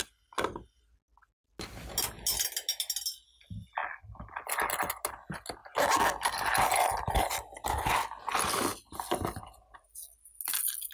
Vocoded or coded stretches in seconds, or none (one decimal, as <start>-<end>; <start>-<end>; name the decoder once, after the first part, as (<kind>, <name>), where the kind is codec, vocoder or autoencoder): none